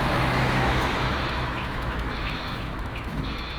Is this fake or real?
fake